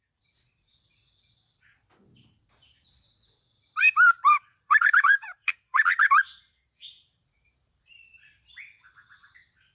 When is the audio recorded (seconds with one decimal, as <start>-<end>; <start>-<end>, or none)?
0.0-3.8; 7.9-9.7